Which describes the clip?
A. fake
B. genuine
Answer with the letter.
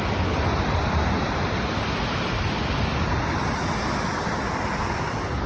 B